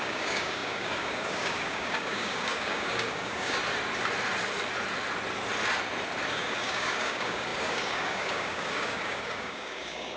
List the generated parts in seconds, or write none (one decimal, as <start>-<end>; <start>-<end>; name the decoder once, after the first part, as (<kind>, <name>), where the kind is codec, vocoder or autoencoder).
0.0-3.6 (codec, DAC); 6.3-10.2